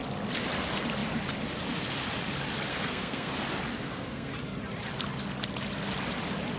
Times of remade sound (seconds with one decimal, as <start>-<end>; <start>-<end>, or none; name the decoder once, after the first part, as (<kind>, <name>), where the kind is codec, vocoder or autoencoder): 2.7-3.3 (codec, SNAC); 3.8-4.3